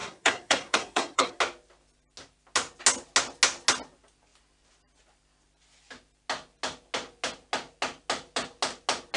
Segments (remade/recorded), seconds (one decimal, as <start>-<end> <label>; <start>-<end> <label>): 0.0-1.4 remade; 1.4-9.2 recorded